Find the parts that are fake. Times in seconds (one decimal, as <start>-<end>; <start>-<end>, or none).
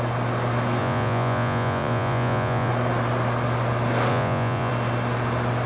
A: 0.8-2.7; 4.1-4.7